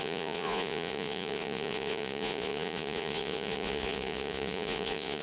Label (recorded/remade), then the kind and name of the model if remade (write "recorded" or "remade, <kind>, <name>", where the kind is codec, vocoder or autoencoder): remade, vocoder, Vocos